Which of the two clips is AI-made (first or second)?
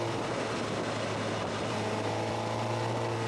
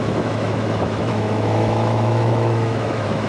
second